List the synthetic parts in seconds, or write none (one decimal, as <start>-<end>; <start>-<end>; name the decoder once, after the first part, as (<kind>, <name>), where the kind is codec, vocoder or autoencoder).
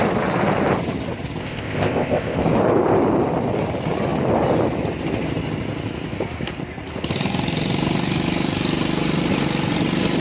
1.4-2.4 (codec, ZipCodec)